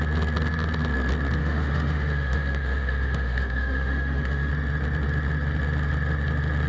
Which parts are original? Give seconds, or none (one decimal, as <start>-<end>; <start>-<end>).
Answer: 0.0-1.4; 4.5-6.7